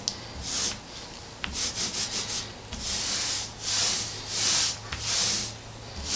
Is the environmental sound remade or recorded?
recorded